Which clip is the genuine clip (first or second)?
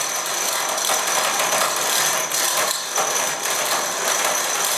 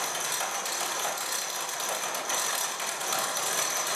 second